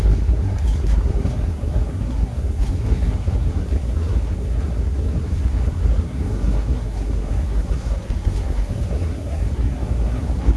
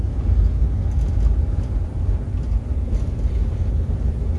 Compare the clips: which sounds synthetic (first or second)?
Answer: first